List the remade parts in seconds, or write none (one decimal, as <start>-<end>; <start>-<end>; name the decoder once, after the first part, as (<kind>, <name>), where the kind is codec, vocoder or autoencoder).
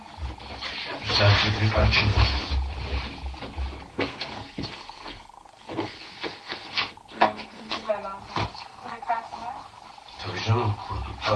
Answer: 1.8-2.4 (codec, SNAC); 3.9-7.9; 8.5-9.1